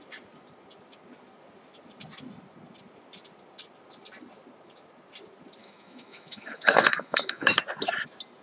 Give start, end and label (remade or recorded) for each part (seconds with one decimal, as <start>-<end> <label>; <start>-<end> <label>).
0.0-5.6 recorded; 5.6-7.6 remade; 7.6-8.4 recorded